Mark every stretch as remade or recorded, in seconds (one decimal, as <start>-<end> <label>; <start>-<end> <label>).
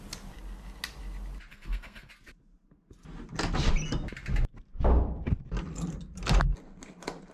0.0-1.5 recorded; 1.5-2.1 remade; 2.1-7.3 recorded